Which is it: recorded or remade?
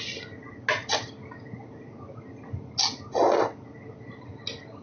recorded